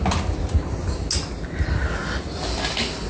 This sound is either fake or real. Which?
real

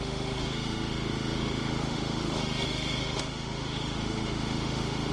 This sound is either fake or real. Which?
fake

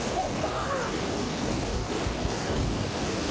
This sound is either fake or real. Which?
fake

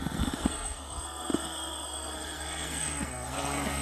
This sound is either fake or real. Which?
fake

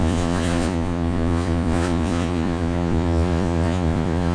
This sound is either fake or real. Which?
fake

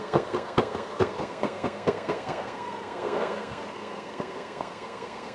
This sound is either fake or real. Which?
fake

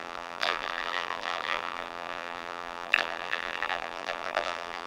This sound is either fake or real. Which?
fake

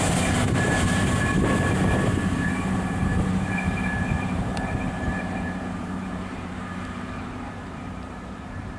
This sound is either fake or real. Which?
fake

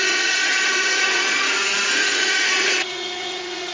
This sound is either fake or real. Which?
fake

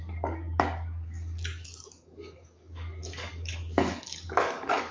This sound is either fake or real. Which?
fake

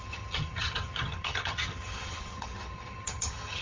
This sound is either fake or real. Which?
fake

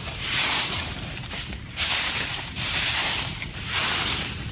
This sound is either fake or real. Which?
fake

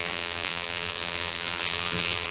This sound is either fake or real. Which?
fake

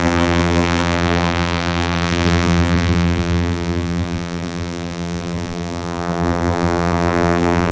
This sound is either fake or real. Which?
fake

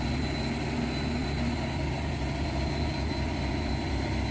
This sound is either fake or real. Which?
real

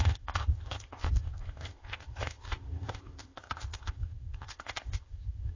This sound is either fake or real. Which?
fake